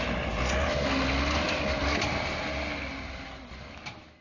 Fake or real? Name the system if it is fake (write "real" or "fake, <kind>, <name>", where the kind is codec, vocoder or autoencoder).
real